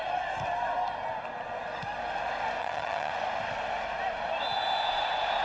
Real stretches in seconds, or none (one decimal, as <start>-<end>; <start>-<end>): 0.0-2.6; 3.1-5.4